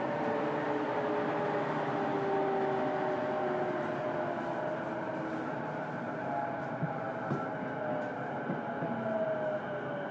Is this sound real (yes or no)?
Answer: yes